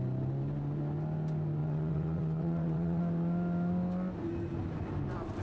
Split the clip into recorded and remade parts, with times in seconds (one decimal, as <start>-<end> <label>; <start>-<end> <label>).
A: 0.0-1.6 recorded; 1.6-3.0 remade; 3.0-5.4 recorded